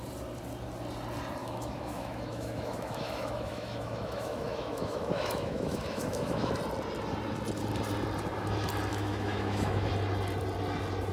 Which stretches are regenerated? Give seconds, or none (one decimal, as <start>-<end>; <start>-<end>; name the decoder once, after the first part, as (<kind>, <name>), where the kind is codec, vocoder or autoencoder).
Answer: 1.4-6.5 (autoencoder, DAC-VAE); 8.9-9.9